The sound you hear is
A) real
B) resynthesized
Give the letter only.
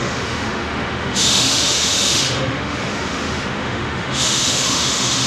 B